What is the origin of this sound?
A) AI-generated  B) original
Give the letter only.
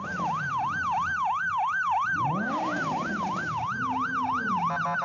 B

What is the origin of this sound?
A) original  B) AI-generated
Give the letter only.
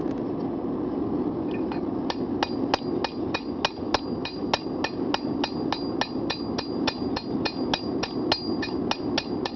A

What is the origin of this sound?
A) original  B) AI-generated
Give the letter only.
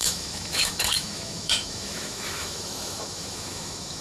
B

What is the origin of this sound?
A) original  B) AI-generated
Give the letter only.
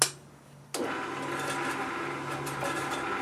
A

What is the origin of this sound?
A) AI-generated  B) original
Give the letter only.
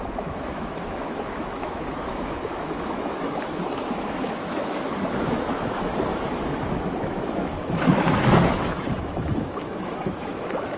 A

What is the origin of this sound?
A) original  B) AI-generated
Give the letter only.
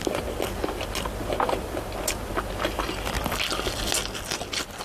A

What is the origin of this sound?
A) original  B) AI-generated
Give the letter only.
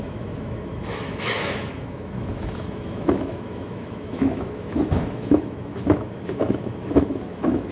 B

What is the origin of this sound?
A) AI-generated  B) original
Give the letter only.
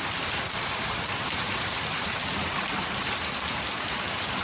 B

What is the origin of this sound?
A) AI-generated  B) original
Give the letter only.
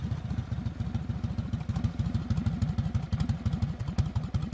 B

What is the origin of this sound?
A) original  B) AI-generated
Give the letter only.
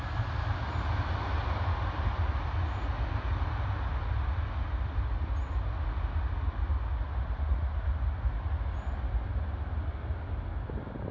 A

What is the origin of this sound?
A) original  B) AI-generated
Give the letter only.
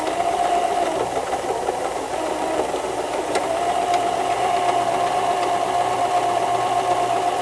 A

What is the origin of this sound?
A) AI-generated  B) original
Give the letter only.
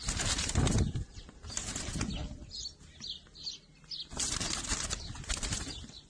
B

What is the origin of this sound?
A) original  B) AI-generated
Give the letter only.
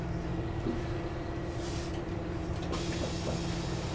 A